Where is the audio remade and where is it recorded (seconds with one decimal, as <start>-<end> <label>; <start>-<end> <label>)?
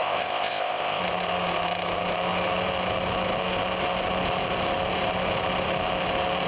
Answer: 0.0-1.0 remade; 1.0-6.5 recorded